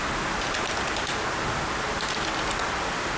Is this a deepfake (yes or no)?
no